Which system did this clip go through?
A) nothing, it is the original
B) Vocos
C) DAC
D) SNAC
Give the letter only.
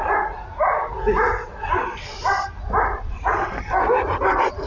A